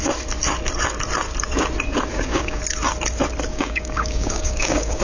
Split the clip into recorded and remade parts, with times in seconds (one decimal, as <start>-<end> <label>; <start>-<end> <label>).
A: 0.0-2.1 recorded; 2.1-2.6 remade; 2.6-3.5 recorded; 3.5-5.0 remade